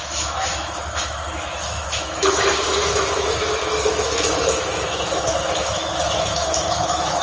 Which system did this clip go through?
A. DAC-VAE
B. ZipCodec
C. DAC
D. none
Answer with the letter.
A